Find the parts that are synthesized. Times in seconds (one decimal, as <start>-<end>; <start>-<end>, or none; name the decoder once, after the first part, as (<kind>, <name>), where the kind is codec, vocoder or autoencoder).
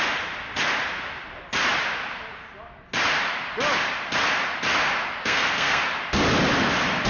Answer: 5.2-5.8 (codec, SNAC)